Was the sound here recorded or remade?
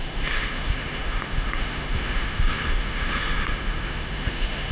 remade